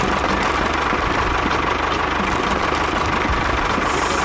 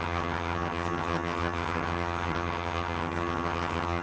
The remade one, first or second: second